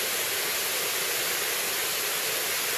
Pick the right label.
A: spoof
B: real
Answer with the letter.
B